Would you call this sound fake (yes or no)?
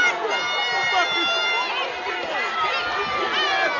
no